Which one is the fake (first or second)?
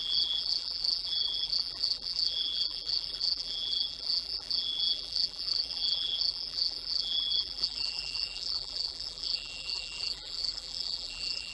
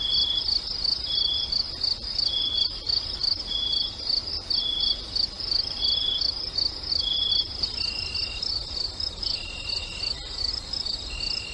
first